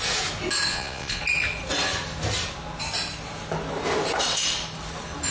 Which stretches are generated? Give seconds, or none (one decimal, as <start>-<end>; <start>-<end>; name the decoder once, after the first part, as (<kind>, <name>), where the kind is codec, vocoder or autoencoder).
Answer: 0.7-1.2 (vocoder, Vocos)